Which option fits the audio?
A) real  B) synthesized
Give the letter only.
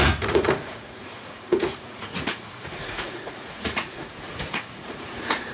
B